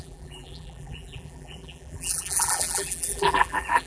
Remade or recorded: remade